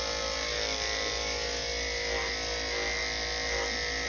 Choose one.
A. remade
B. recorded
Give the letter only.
B